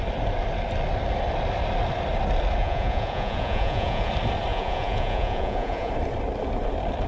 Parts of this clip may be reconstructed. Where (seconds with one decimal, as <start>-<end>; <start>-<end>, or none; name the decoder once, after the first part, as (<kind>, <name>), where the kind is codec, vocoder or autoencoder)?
2.6-4.1 (vocoder, Vocos); 4.5-5.9